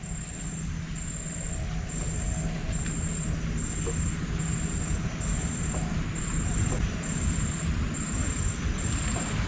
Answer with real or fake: real